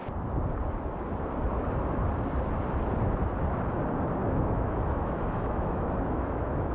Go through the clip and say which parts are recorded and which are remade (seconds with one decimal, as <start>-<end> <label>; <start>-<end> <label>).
0.0-4.2 recorded; 4.2-6.7 remade